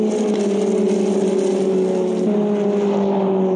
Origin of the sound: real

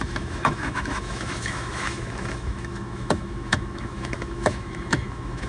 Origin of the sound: fake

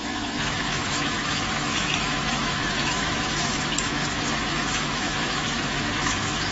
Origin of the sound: fake